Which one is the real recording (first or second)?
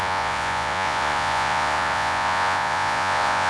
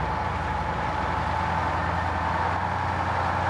second